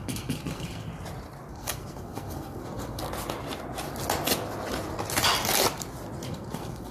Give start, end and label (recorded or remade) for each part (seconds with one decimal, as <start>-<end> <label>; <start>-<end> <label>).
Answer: 0.0-0.9 remade; 0.9-1.5 recorded; 1.5-3.0 remade; 3.0-6.3 recorded; 6.3-6.9 remade